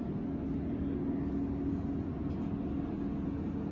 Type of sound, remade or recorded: recorded